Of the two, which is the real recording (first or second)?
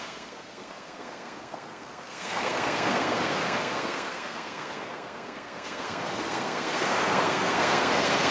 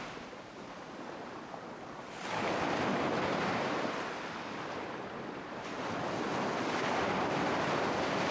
second